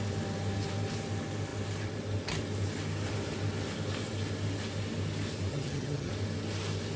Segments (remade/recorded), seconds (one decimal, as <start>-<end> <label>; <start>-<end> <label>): 0.0-5.5 recorded; 5.5-6.1 remade; 6.1-7.0 recorded